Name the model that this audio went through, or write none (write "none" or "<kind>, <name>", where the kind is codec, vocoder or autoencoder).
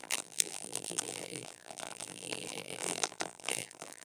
vocoder, BigVGAN v2